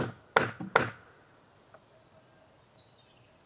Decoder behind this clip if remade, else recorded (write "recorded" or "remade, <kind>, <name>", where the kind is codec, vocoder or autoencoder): recorded